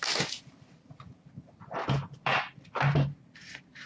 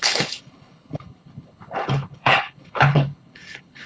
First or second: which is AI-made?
second